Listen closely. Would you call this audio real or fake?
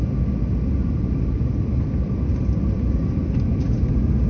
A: real